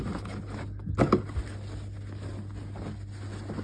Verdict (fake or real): real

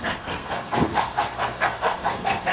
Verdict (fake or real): fake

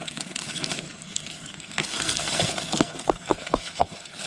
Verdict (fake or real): fake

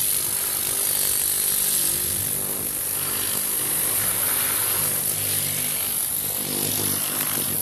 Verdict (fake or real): real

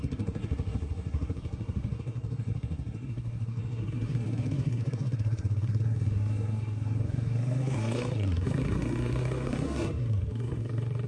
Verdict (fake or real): fake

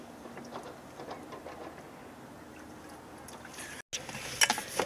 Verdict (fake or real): real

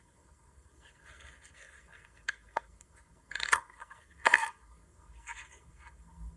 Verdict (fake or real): fake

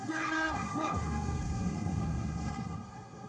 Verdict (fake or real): fake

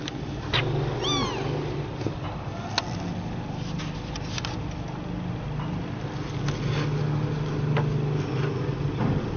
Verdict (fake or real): real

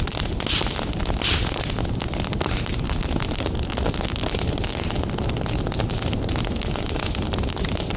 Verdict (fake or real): real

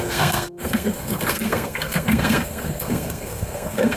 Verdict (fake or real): fake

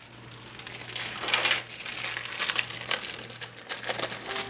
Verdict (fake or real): real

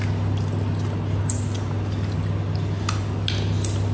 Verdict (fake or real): real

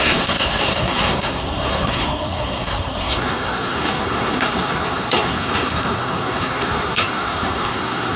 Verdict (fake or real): fake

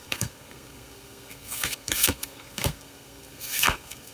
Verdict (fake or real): fake